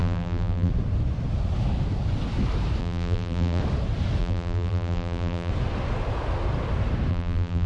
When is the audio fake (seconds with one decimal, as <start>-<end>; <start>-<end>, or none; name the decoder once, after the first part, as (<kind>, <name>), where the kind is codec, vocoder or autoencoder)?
0.0-0.7 (vocoder, BigVGAN v2); 2.8-3.6; 4.2-5.5; 7.1-7.7